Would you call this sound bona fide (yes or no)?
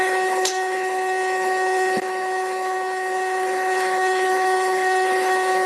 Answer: no